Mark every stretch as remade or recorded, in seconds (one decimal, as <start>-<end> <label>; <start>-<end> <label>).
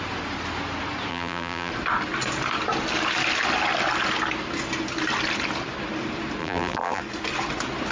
0.0-1.1 recorded; 1.1-1.7 remade; 1.7-6.4 recorded; 6.4-7.0 remade; 7.0-7.9 recorded